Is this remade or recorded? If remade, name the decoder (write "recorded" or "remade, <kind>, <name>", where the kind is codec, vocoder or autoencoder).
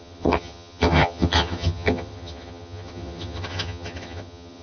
remade, vocoder, HiFi-GAN